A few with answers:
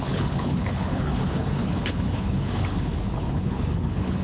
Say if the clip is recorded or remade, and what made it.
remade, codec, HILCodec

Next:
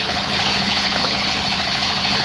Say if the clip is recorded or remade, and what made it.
remade, codec, HILCodec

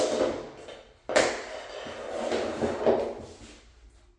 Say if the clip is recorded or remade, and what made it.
recorded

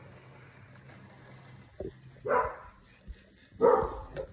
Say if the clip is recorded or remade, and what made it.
recorded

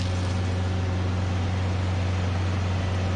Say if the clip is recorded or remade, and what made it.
recorded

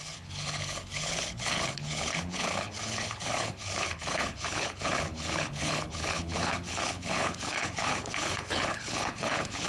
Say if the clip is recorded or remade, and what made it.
remade, codec, HILCodec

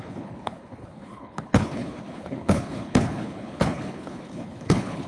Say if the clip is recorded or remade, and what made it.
remade, codec, HILCodec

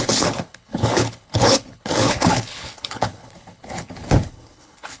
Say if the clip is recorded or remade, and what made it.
remade, codec, HILCodec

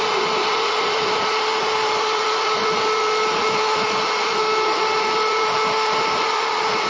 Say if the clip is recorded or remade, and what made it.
recorded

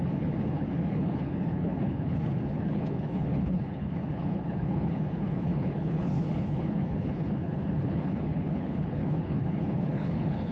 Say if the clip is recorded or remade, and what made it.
remade, codec, HILCodec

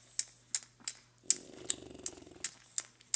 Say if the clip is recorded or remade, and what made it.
recorded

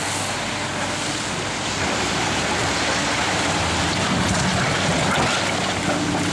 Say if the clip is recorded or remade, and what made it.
recorded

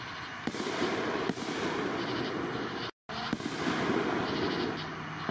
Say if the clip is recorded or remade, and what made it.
recorded